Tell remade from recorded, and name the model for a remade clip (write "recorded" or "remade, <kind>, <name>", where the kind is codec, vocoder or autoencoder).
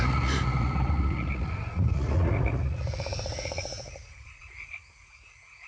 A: remade, vocoder, Vocos